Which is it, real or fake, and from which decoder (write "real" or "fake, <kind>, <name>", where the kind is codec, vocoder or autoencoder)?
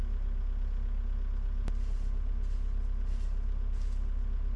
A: real